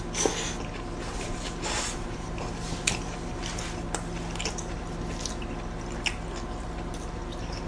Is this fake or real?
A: real